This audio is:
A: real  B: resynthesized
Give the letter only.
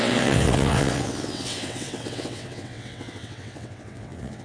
B